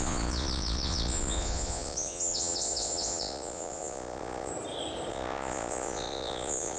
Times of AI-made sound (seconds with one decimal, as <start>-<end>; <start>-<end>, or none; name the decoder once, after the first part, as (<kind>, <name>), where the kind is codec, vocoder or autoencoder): 0.0-4.5 (vocoder, Vocos); 5.1-6.8